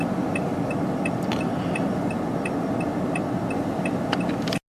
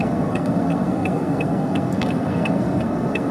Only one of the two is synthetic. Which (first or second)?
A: second